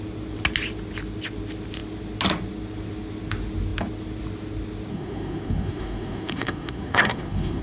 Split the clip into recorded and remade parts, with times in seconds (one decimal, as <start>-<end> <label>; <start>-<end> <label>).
0.0-4.9 recorded; 4.9-7.6 remade

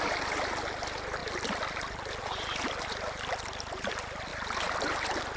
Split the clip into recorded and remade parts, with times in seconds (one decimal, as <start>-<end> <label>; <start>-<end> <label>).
0.0-5.4 recorded

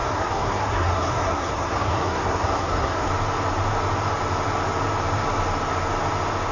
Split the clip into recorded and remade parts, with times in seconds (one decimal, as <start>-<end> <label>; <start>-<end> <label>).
0.0-3.1 remade; 3.1-6.5 recorded

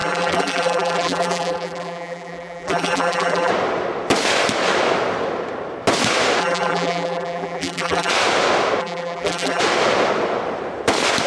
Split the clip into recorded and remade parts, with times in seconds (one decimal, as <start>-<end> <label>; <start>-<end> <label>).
0.0-3.5 remade; 3.5-6.4 recorded; 6.4-8.1 remade; 8.1-8.8 recorded; 8.8-9.6 remade; 9.6-11.3 recorded

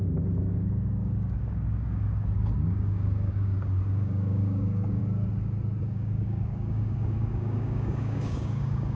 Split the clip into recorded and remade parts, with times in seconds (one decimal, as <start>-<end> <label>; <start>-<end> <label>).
0.0-5.0 remade; 5.0-5.8 recorded; 5.8-9.0 remade

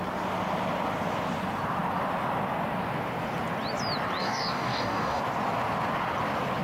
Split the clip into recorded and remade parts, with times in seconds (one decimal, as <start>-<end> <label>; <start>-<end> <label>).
0.0-4.2 recorded; 4.2-5.2 remade; 5.2-6.6 recorded

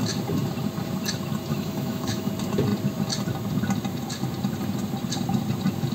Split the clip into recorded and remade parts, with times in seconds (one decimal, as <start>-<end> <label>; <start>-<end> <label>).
0.0-1.5 recorded; 1.5-2.3 remade; 2.3-5.9 recorded